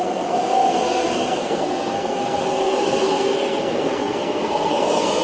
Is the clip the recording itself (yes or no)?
no